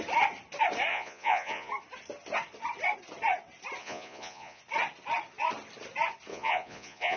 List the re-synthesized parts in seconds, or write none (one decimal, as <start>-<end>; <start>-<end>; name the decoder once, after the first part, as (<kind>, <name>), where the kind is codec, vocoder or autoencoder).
0.9-1.7 (vocoder, Vocos); 3.8-4.6; 6.3-7.2